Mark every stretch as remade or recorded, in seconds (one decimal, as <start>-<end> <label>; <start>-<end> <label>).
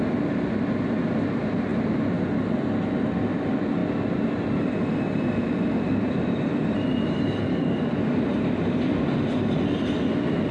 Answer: 0.0-7.5 recorded; 7.5-8.2 remade; 8.2-10.5 recorded